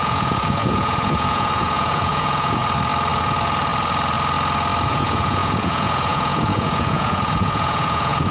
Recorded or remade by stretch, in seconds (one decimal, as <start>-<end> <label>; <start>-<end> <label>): 0.0-2.6 remade; 2.6-4.9 recorded; 4.9-8.3 remade

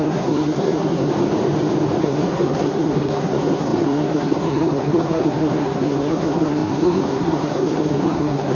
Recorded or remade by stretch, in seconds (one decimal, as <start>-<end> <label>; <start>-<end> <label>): 0.0-1.1 remade; 1.1-2.0 recorded; 2.0-8.5 remade

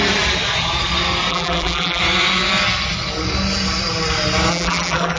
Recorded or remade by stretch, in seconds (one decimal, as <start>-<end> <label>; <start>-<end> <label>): 0.0-1.3 recorded; 1.3-2.0 remade; 2.0-4.5 recorded; 4.5-5.2 remade